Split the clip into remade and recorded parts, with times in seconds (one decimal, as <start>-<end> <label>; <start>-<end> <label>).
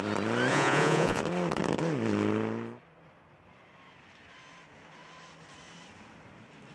0.0-0.5 recorded; 0.5-1.2 remade; 1.2-6.7 recorded